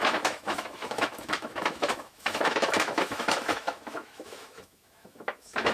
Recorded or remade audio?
remade